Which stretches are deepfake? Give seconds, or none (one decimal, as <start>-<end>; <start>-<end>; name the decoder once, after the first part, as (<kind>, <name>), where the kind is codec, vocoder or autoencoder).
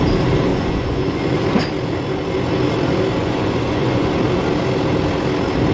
0.5-1.3 (vocoder, Vocos); 3.2-4.1